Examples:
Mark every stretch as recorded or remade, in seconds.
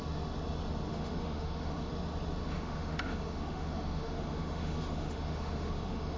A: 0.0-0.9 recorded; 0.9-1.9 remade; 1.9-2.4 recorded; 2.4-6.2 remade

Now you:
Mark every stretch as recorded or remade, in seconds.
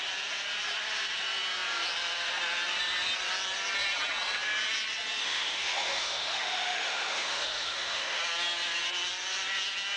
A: 0.0-5.2 recorded; 5.2-8.2 remade; 8.2-10.0 recorded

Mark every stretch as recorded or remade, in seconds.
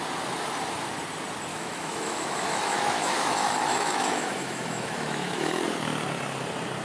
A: 0.0-1.5 recorded; 1.5-5.6 remade; 5.6-6.8 recorded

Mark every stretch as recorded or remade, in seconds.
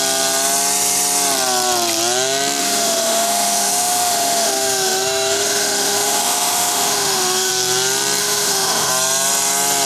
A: 0.0-2.6 recorded; 2.6-7.5 remade; 7.5-8.2 recorded; 8.2-8.9 remade; 8.9-9.8 recorded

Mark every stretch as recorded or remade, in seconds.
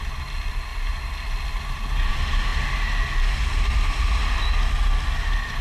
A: 0.0-5.6 recorded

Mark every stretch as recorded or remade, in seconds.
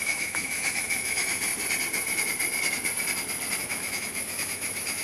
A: 0.0-1.5 remade; 1.5-3.6 recorded; 3.6-5.0 remade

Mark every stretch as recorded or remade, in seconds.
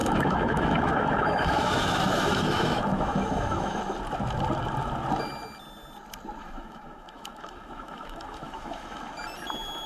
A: 0.0-3.8 remade; 3.8-6.4 recorded; 6.4-9.0 remade; 9.0-9.9 recorded